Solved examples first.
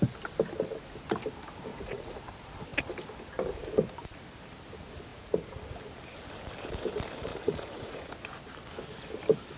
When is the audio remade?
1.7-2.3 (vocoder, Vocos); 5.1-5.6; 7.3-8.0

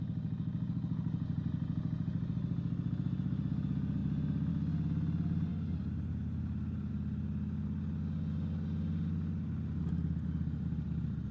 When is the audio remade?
none

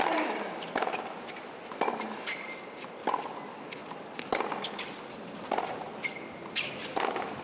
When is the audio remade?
none

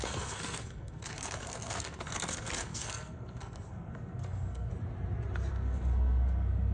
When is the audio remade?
0.0-4.7 (codec, SNAC); 5.5-6.7

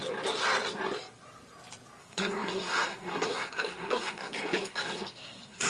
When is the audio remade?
2.0-5.7 (codec, SNAC)

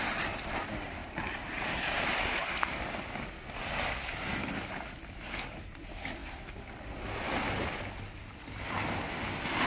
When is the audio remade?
none

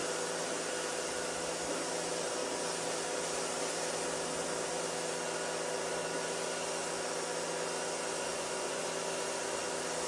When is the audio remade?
8.3-8.9 (vocoder, Vocos)